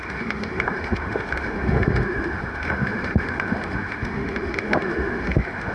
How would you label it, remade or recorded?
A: remade